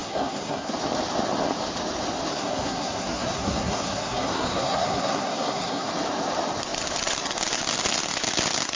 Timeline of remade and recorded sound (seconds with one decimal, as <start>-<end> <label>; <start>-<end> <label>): 0.0-0.7 remade; 0.7-2.3 recorded; 2.3-5.9 remade; 5.9-8.8 recorded